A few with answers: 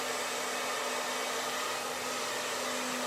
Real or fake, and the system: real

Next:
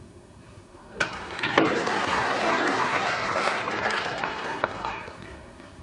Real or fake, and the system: fake, codec, SNAC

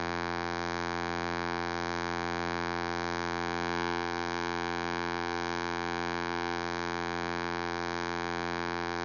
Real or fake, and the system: fake, vocoder, BigVGAN v2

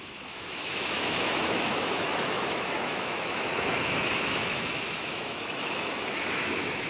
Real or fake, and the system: fake, autoencoder, DAC-VAE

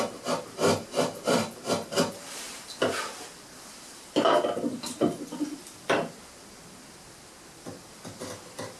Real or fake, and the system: real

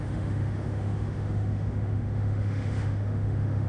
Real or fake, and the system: fake, autoencoder, DAC-VAE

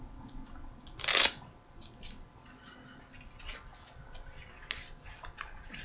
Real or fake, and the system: real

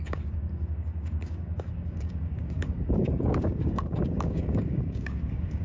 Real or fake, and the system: fake, codec, DAC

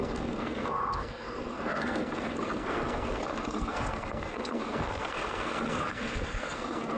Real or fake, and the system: fake, codec, SNAC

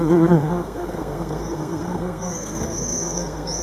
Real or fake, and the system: fake, codec, SNAC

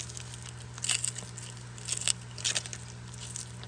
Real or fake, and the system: real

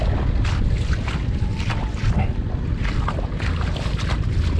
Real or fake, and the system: real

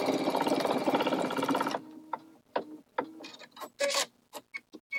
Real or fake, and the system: real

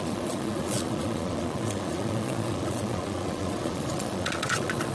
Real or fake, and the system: fake, vocoder, Vocos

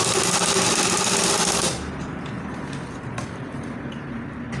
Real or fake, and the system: real